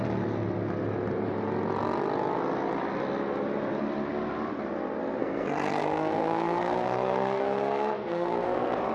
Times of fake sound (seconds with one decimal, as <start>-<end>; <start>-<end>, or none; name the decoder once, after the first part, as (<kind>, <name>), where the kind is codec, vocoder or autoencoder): 5.2-8.9 (codec, SNAC)